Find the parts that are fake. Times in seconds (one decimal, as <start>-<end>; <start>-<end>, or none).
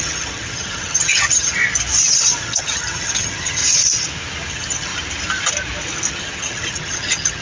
0.0-1.6; 2.3-3.6; 4.5-4.9; 6.1-7.4